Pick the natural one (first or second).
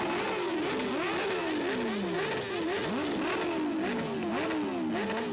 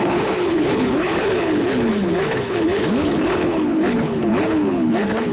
first